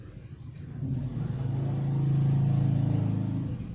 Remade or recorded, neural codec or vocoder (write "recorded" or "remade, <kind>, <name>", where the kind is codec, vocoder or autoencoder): recorded